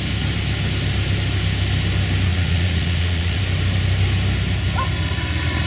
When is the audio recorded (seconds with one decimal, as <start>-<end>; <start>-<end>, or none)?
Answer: 0.0-2.3; 3.4-5.7